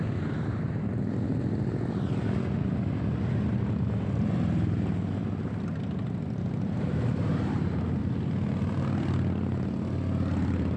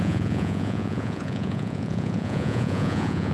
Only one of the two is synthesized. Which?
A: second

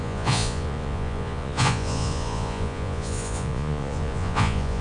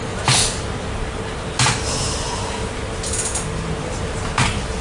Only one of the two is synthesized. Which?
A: first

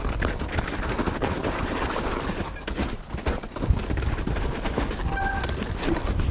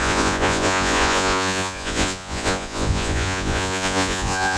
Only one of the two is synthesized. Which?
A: second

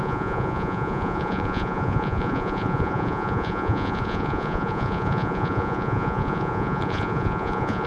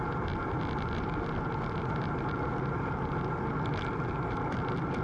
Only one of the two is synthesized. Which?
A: first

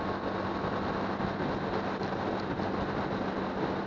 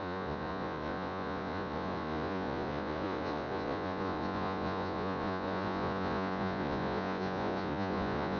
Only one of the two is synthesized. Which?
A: second